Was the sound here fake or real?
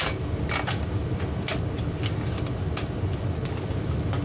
real